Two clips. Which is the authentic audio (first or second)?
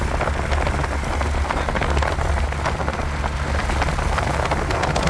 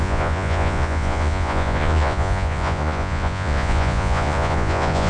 first